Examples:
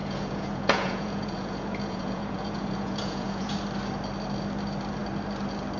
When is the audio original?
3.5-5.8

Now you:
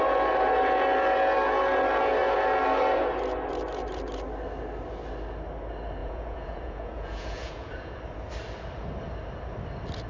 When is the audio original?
0.0-6.0; 8.0-10.1

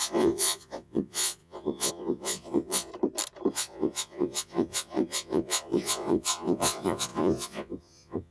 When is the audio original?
2.9-3.5

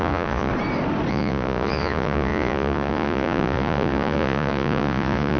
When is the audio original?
0.5-1.1

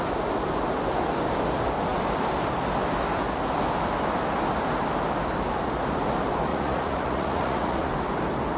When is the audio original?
0.0-6.5; 7.9-8.6